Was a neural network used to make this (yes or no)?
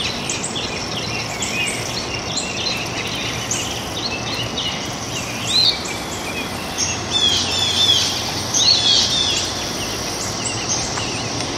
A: no